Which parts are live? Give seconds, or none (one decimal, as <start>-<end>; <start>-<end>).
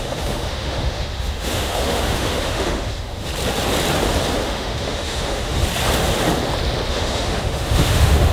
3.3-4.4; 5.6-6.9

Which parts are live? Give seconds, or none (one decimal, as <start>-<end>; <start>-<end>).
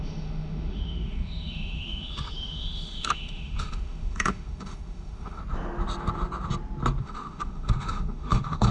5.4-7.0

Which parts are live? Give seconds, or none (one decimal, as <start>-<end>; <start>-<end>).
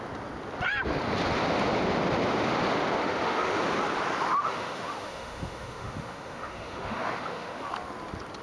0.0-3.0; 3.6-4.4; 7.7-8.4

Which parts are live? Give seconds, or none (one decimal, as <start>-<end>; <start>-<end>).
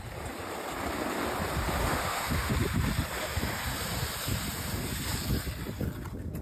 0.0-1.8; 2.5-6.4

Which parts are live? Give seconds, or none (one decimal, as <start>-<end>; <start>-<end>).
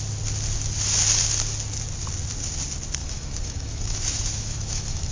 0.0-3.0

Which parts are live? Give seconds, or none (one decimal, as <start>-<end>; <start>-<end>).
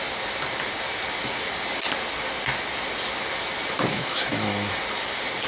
0.0-3.9; 4.7-5.5